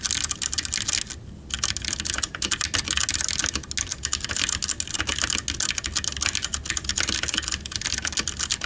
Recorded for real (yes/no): yes